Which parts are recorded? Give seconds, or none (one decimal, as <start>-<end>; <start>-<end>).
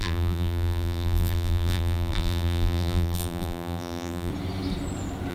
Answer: 4.3-5.3